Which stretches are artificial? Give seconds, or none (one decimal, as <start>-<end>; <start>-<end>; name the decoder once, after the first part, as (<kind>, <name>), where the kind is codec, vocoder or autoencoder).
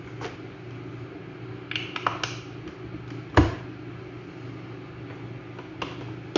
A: none